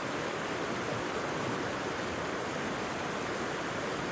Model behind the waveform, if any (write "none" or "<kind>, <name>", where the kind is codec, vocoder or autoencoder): none